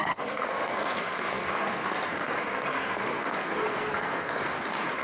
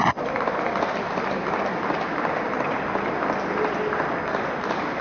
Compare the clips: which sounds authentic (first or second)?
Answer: second